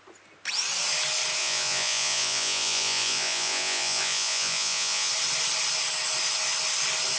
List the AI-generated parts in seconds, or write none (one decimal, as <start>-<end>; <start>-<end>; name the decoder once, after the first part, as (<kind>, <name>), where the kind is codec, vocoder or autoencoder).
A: 1.4-5.1 (vocoder, Vocos)